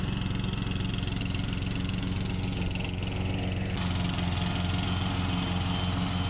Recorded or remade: recorded